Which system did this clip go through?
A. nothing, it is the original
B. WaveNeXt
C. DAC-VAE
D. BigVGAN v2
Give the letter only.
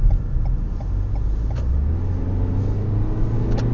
A